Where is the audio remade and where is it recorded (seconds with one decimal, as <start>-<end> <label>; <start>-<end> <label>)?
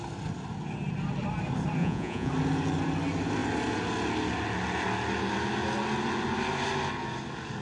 0.0-1.8 recorded; 1.8-2.3 remade; 2.3-7.6 recorded